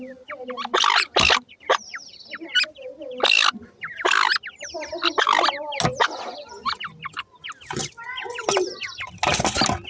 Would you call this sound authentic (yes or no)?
yes